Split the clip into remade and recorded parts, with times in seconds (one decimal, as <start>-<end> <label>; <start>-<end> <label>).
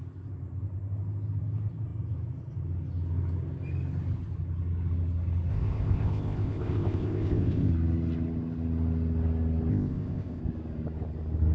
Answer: 0.0-5.5 recorded; 5.5-7.7 remade; 7.7-9.7 recorded; 9.7-10.4 remade; 10.4-11.5 recorded